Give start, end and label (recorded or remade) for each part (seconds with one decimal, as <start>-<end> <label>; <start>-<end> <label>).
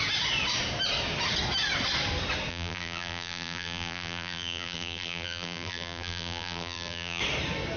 0.0-2.5 recorded; 2.5-7.2 remade; 7.2-7.8 recorded